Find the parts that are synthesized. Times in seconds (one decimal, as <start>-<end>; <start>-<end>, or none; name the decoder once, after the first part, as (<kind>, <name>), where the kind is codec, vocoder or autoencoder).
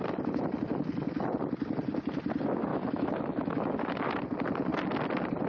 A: 2.7-4.1 (autoencoder, DAC-VAE)